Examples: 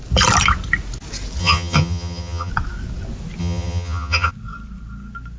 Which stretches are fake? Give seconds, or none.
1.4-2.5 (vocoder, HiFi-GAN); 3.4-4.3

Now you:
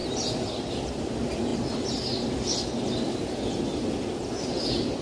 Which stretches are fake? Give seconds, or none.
none

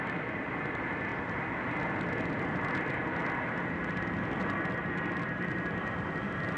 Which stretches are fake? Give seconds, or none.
none